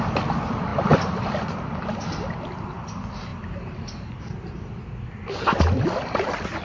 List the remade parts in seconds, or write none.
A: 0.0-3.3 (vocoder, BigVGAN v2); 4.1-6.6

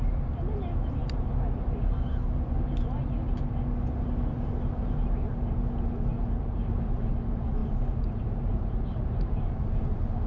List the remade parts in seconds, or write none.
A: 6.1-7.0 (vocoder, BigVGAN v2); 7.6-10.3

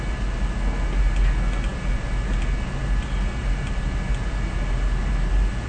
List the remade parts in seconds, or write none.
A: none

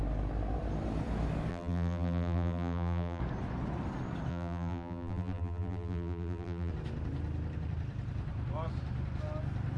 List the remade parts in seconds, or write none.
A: 1.5-3.2 (vocoder, BigVGAN v2); 4.3-6.7